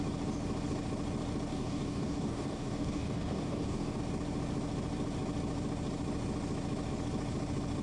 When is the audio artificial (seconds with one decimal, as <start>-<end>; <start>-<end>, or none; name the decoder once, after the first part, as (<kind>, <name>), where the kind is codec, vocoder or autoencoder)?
1.5-4.0 (codec, DAC)

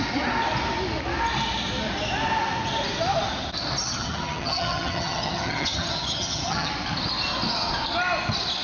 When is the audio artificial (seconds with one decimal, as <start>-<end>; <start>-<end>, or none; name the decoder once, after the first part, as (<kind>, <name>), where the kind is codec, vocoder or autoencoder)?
3.8-6.7 (vocoder, HiFi-GAN)

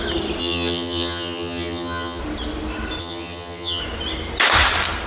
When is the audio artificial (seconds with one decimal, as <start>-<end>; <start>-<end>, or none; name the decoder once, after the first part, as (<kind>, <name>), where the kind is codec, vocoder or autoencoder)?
0.4-2.2 (vocoder, HiFi-GAN); 3.0-3.8

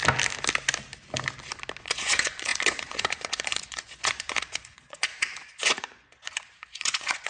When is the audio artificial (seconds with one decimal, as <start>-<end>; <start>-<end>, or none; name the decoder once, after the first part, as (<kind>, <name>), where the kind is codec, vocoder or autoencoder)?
1.8-7.3 (vocoder, Vocos)

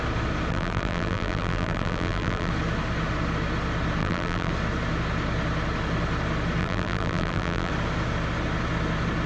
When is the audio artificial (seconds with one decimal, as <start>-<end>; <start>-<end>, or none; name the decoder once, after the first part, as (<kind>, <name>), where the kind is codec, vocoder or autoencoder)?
0.5-2.5 (vocoder, BigVGAN v2); 4.0-4.5; 6.6-7.7

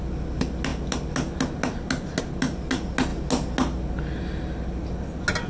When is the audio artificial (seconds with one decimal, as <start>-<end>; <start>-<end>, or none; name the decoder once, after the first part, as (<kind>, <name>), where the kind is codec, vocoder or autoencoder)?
none

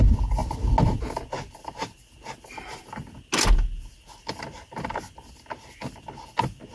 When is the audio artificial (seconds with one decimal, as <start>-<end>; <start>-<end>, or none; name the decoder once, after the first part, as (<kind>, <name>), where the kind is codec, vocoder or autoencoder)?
none

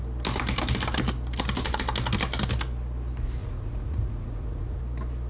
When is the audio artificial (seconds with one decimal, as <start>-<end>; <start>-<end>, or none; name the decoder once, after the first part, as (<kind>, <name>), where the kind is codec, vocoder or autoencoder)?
3.4-4.8 (vocoder, Vocos)